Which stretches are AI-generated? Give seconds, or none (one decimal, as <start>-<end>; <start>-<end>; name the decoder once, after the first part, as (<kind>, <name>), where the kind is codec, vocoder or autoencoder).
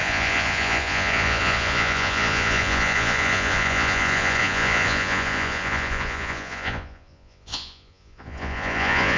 0.0-9.2 (vocoder, Vocos)